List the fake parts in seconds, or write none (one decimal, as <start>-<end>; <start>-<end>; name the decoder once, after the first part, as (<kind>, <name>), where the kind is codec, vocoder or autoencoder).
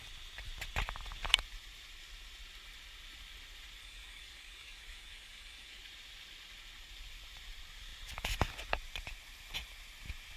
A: 3.8-5.8 (codec, DAC)